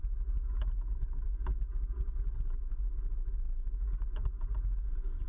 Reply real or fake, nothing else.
real